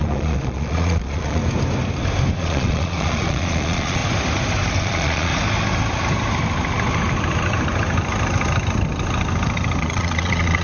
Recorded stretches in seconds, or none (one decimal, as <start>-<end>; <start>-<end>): 1.4-2.4; 4.0-4.8; 5.3-9.8